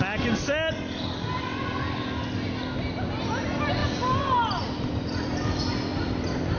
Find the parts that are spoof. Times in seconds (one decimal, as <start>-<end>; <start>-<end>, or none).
none